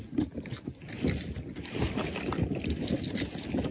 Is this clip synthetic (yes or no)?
no